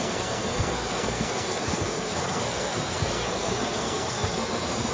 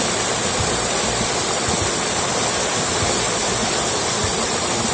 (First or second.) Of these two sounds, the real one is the second